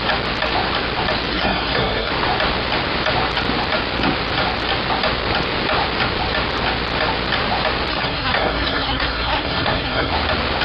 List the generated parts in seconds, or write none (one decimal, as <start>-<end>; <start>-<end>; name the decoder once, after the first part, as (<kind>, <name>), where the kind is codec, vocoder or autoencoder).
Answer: 1.3-2.1 (codec, SNAC); 7.9-10.1